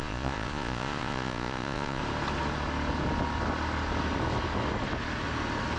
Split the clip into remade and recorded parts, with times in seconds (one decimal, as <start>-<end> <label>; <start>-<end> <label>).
0.0-2.0 remade; 2.0-5.8 recorded